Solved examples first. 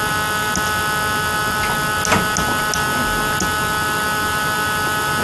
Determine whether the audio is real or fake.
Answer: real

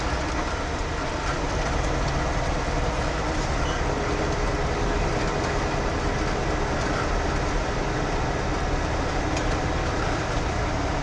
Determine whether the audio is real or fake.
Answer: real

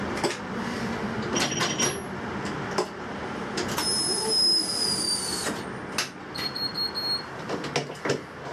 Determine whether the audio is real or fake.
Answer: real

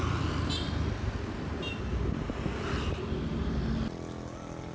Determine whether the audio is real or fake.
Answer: real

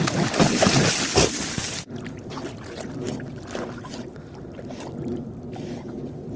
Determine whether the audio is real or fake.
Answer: real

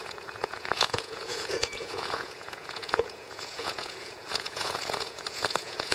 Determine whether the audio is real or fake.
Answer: fake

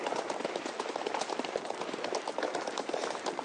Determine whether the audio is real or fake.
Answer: real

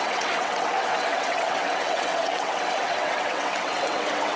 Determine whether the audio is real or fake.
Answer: fake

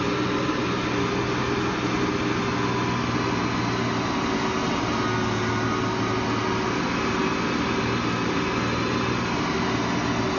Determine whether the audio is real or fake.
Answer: real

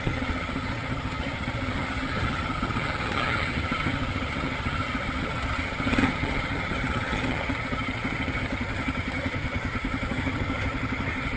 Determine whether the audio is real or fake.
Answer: fake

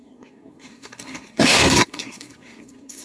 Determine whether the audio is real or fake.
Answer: fake